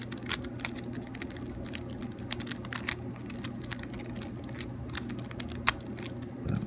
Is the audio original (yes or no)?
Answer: yes